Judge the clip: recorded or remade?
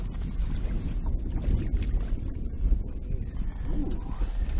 recorded